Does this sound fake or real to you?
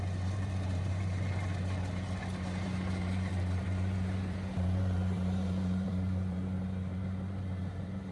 fake